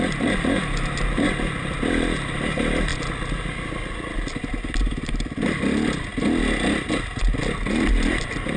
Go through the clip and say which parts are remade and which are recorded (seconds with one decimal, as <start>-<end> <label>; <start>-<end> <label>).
0.0-2.9 remade; 2.9-4.4 recorded; 4.4-6.1 remade; 6.1-7.9 recorded; 7.9-8.6 remade